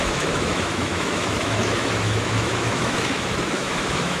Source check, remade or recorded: remade